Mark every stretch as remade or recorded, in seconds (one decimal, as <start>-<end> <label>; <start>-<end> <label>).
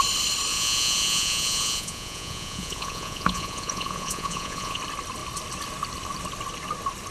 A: 0.0-0.5 recorded; 0.5-4.8 remade; 4.8-7.1 recorded